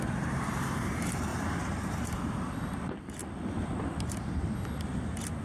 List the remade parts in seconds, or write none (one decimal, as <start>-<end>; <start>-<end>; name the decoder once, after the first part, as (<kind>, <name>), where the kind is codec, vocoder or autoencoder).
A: 1.3-2.4 (vocoder, BigVGAN v2)